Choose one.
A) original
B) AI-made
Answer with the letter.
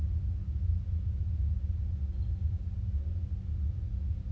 A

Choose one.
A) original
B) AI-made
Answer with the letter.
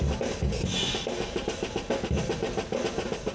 A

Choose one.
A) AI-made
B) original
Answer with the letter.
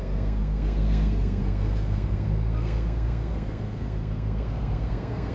A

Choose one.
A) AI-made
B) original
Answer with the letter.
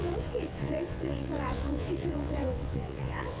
A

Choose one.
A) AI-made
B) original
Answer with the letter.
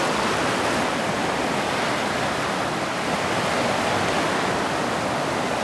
B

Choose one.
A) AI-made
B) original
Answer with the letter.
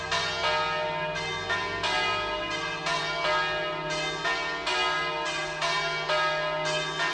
B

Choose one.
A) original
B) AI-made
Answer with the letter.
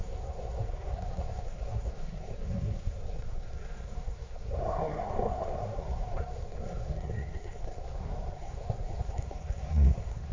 B